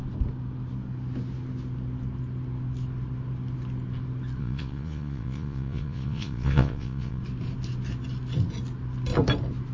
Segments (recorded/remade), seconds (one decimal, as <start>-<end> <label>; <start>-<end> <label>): 0.0-4.4 recorded; 4.4-7.2 remade; 7.2-9.7 recorded